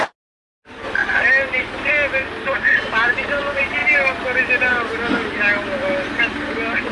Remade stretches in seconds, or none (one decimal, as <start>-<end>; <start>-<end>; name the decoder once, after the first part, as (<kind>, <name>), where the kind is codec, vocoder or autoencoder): none